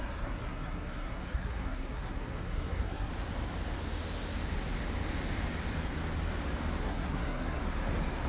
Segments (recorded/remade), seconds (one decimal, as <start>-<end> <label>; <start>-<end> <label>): 0.0-3.1 remade; 3.1-6.8 recorded; 6.8-7.6 remade; 7.6-8.3 recorded